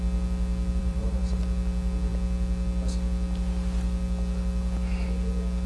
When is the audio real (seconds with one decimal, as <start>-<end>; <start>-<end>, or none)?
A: 0.0-0.8; 1.4-5.7